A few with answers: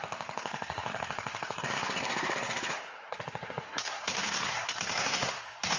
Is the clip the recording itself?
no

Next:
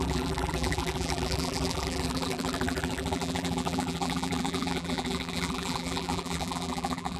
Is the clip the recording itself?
no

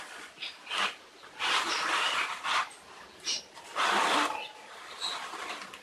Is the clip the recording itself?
yes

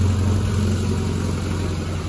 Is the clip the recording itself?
yes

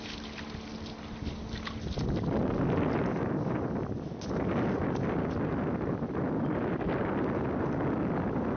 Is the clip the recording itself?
yes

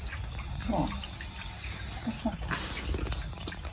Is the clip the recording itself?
yes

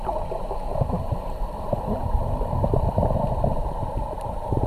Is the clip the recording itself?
no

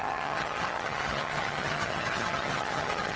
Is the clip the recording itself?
no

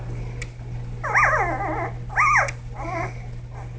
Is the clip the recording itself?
yes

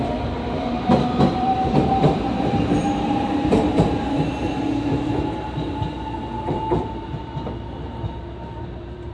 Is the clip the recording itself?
no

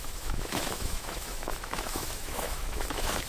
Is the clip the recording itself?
no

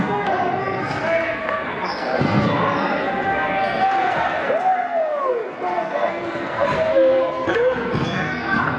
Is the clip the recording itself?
no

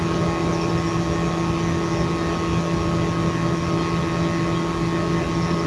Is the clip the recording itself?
yes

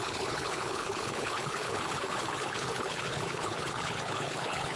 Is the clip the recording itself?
no